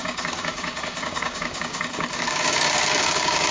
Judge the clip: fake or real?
fake